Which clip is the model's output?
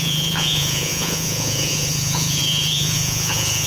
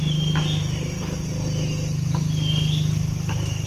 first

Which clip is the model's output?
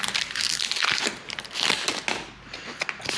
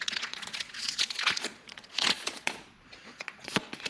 second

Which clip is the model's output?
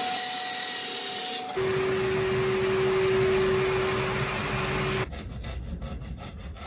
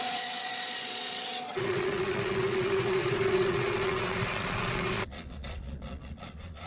second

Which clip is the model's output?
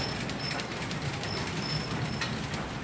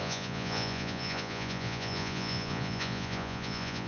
second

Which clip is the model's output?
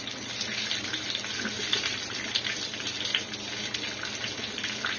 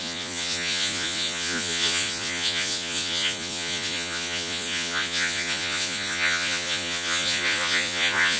second